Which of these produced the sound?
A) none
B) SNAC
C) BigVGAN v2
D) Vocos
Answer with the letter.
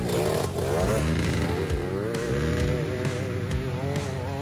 A